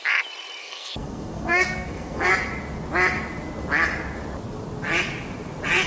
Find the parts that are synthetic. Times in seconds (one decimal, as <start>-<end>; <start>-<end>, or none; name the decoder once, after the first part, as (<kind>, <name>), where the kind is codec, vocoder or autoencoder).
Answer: 0.6-2.3 (codec, SNAC)